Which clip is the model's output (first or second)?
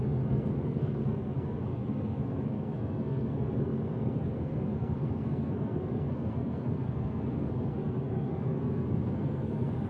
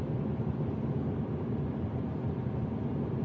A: first